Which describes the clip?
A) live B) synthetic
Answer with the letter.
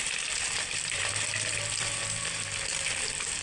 B